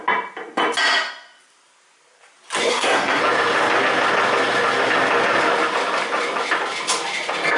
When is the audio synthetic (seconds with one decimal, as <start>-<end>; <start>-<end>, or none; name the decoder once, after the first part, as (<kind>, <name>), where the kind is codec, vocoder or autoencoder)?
2.7-3.2 (codec, SNAC)